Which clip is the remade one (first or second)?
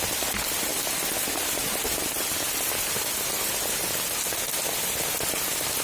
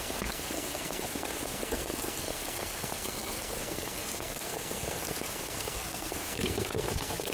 second